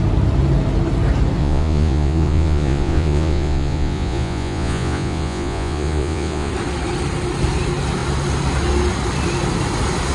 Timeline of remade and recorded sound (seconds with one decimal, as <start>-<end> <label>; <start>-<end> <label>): 0.0-1.4 recorded; 1.4-6.5 remade; 6.5-10.1 recorded